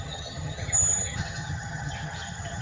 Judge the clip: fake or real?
fake